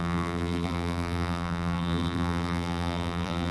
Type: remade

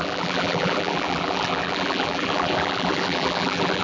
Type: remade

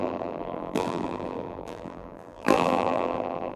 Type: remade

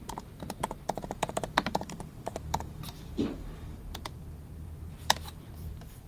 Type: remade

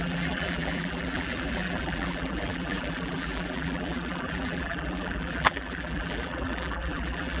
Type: remade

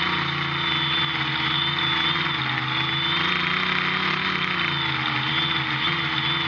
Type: recorded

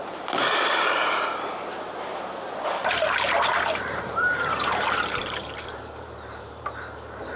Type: remade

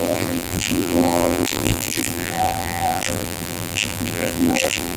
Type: remade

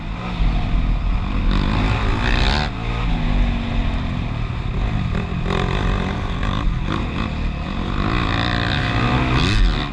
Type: recorded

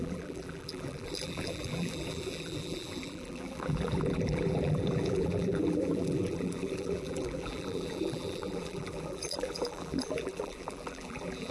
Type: remade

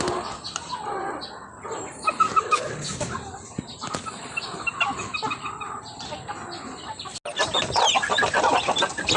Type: recorded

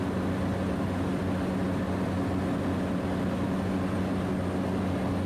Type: recorded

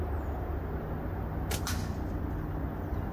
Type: recorded